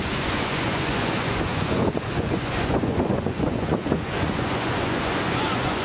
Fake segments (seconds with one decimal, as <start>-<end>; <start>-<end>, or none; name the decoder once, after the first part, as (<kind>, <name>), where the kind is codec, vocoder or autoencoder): 0.0-5.8 (vocoder, Vocos)